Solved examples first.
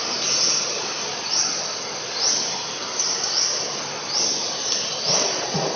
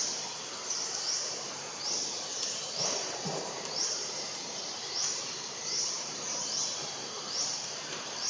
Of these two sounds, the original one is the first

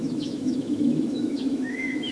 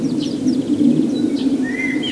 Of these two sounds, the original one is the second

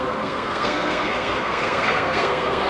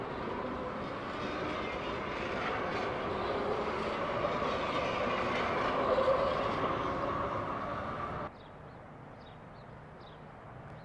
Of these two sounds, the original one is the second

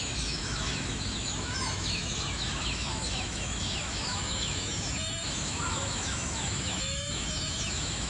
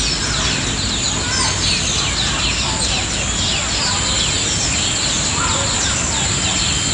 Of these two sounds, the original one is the second